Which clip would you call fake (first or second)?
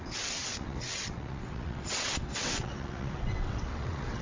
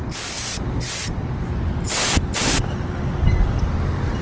first